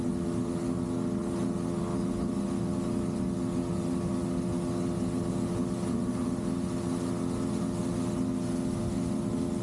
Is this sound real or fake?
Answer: real